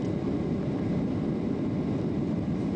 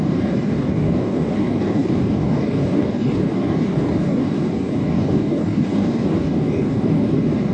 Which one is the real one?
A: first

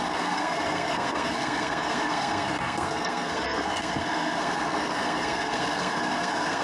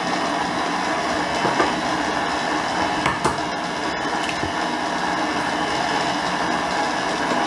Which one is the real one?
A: second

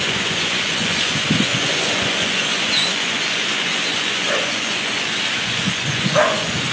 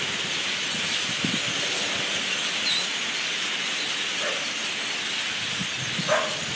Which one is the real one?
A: second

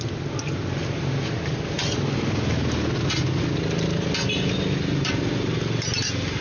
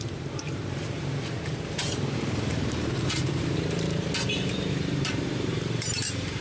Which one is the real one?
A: first